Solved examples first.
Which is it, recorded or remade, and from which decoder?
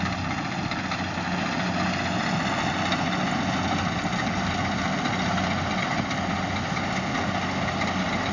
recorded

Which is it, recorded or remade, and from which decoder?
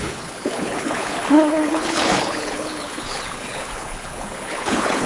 remade, codec, HILCodec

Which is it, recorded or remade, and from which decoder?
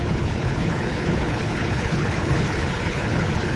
remade, codec, HILCodec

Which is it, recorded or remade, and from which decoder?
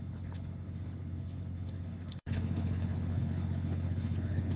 remade, codec, HILCodec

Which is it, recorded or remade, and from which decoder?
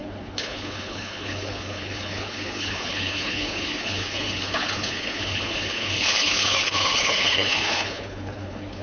remade, codec, HILCodec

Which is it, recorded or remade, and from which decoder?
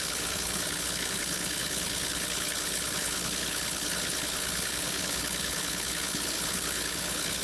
remade, codec, HILCodec